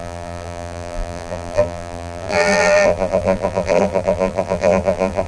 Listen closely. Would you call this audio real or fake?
fake